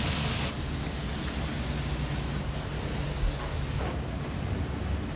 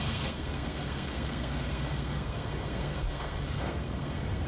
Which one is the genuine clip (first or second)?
first